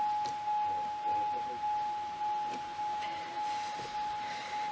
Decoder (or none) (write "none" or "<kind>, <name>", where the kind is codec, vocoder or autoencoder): none